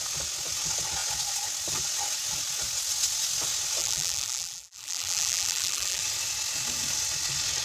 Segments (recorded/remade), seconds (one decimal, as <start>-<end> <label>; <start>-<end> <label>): 0.0-3.8 recorded; 3.8-6.0 remade; 6.0-7.6 recorded